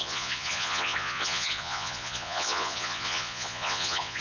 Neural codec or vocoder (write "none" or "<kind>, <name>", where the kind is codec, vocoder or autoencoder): vocoder, Vocos